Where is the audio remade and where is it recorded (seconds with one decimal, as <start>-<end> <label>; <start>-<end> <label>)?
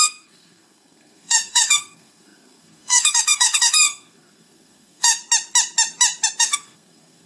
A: 0.0-5.2 remade; 5.2-6.4 recorded; 6.4-7.3 remade